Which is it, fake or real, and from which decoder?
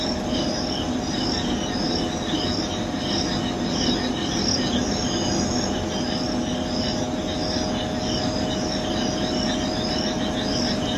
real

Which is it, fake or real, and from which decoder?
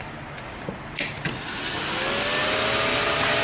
real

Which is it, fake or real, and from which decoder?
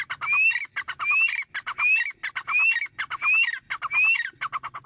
real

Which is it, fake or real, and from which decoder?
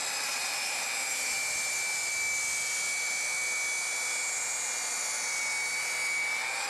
real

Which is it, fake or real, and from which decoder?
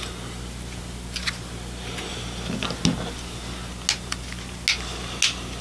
real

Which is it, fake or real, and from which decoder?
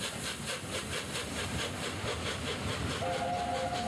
real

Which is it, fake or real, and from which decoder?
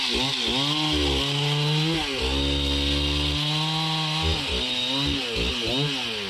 real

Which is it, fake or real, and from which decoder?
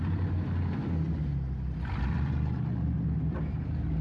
real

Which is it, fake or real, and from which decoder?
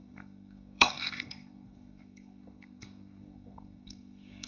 fake, codec, SNAC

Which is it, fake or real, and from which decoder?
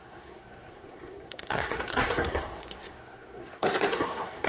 fake, codec, SNAC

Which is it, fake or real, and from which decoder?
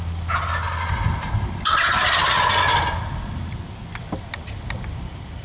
real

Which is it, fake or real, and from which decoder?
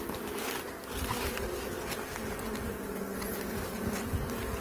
real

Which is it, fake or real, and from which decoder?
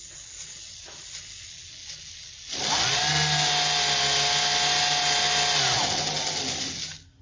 real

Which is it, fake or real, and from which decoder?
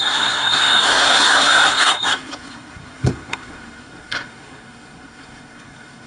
fake, codec, SNAC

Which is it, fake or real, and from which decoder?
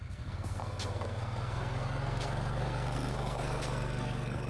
fake, codec, SNAC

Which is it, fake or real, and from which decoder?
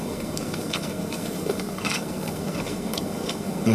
fake, codec, SNAC